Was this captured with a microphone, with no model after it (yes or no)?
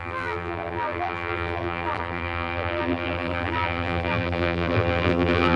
no